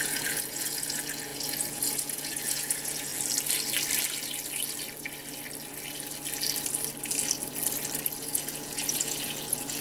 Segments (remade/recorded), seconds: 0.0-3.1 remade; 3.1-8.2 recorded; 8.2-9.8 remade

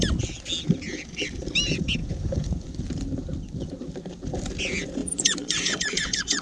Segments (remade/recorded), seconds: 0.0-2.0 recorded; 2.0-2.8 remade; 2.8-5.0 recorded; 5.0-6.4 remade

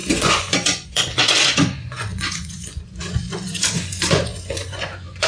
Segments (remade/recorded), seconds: 0.0-5.3 remade